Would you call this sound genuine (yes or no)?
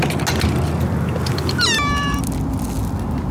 yes